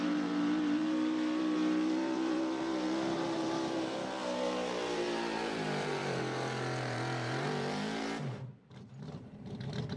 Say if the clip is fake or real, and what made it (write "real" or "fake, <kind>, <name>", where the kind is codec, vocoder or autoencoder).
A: fake, vocoder, BigVGAN v2